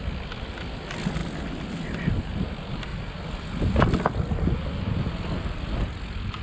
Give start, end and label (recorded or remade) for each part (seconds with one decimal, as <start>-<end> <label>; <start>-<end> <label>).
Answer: 0.0-6.4 recorded